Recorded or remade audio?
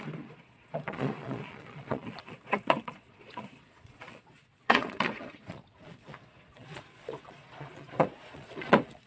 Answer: remade